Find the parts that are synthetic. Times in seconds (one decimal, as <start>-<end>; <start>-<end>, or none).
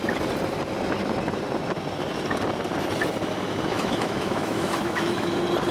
3.7-5.3